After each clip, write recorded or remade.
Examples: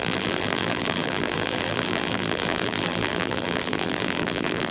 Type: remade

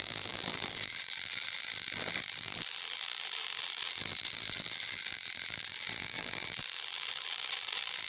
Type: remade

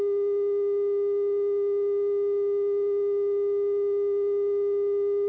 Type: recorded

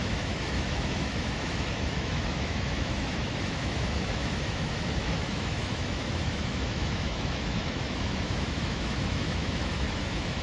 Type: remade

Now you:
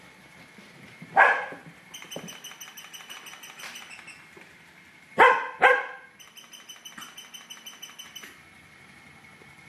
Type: remade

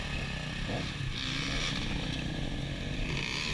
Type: recorded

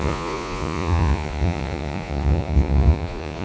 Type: remade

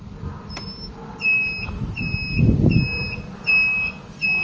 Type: recorded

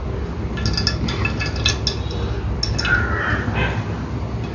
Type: recorded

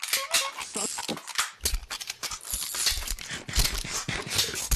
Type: recorded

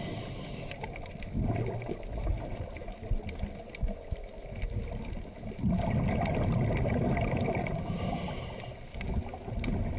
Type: recorded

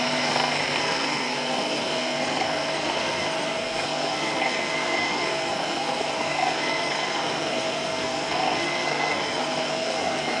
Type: remade